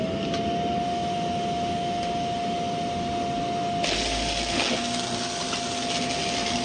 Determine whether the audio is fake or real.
real